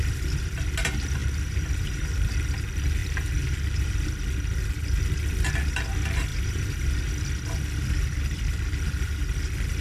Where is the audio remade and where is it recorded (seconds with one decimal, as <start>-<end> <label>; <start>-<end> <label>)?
0.0-1.2 recorded; 1.2-2.1 remade; 2.1-6.3 recorded; 6.3-7.1 remade; 7.1-9.8 recorded